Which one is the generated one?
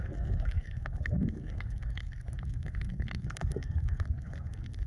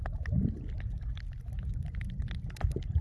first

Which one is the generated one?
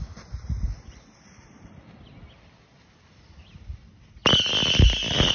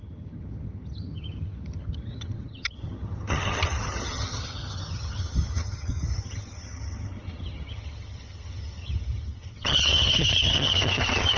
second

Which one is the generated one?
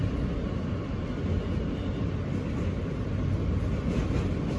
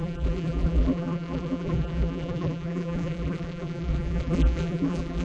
second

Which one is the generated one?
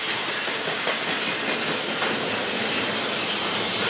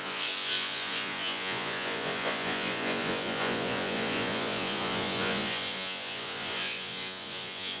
second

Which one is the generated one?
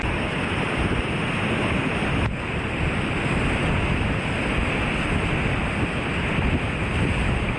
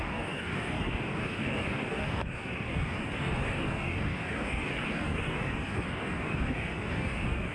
second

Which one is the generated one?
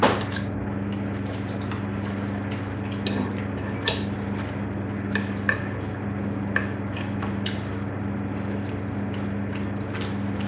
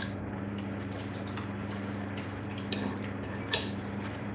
second